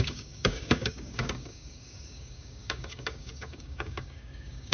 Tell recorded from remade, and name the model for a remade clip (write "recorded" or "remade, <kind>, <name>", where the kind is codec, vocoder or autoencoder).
remade, codec, DAC